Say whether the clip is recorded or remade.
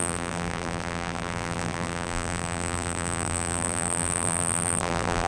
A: remade